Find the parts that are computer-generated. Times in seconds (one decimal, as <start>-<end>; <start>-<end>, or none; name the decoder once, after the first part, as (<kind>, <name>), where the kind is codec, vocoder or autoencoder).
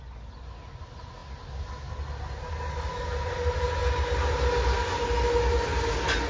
none